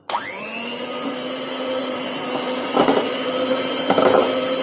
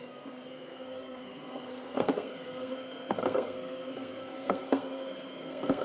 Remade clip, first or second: second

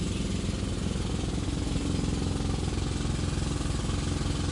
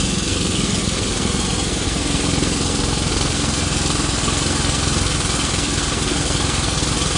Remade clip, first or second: second